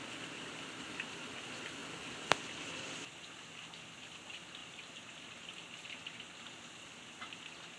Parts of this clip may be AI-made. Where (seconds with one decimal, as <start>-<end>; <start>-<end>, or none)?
none